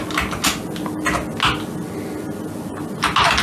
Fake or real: real